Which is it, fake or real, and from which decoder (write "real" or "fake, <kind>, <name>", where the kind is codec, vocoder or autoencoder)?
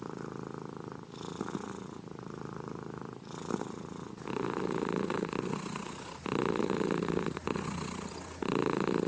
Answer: real